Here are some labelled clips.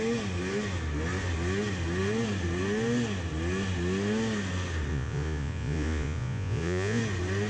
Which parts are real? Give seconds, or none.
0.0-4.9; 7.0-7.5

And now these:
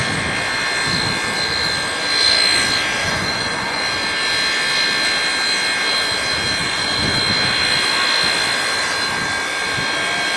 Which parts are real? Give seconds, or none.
0.0-3.0; 3.8-6.6; 7.1-10.4

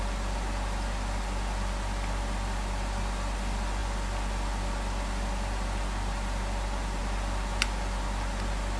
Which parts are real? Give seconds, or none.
0.0-8.8

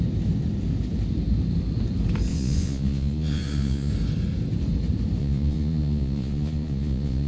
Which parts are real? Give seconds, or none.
0.0-2.3; 3.9-5.2

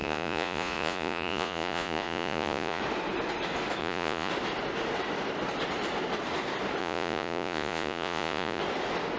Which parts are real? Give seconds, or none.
2.8-3.8; 4.3-6.8; 8.6-9.2

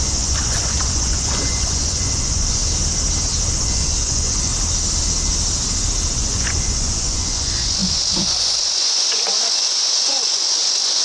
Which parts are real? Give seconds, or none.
2.6-3.5; 4.5-6.1

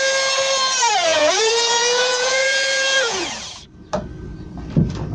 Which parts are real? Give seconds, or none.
0.0-1.1; 3.6-5.1

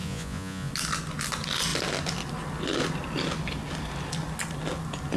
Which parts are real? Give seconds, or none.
0.7-5.2